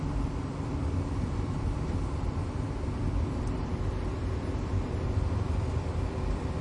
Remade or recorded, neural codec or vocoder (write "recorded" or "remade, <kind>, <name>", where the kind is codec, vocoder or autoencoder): remade, vocoder, BigVGAN v2